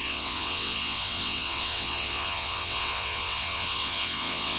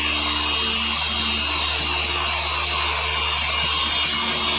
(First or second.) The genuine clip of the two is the second